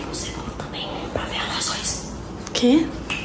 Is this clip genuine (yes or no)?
yes